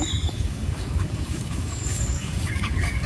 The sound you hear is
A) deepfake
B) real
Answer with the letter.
A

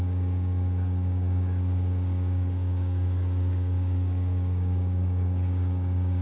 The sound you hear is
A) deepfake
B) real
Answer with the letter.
A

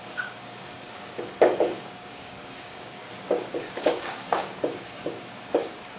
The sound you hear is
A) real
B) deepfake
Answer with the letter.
B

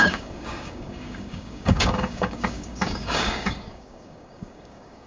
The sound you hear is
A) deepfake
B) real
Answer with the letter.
A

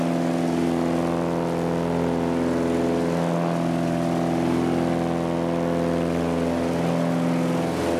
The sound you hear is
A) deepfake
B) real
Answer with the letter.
B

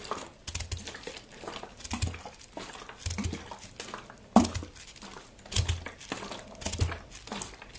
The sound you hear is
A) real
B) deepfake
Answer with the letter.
A